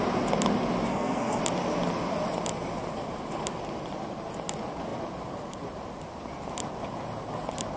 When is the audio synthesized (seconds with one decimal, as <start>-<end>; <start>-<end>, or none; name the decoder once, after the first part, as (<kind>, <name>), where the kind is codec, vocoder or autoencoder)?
0.9-1.4 (codec, SNAC)